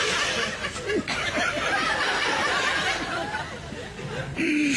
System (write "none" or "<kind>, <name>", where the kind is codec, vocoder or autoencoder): none